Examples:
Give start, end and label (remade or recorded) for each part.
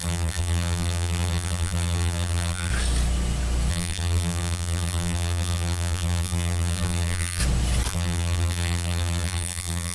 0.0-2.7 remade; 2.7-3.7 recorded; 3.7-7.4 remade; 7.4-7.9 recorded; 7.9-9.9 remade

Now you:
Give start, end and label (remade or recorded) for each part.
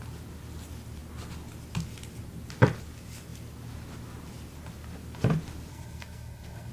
0.0-5.7 recorded; 5.7-6.7 remade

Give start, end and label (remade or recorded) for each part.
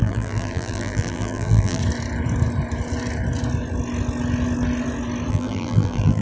0.0-1.8 remade; 1.8-5.3 recorded; 5.3-6.2 remade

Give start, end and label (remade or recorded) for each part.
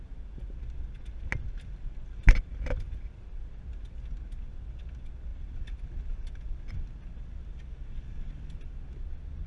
0.0-9.5 recorded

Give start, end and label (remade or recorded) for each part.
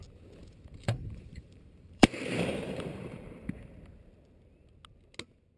0.0-0.4 recorded; 0.4-3.8 remade; 3.8-5.6 recorded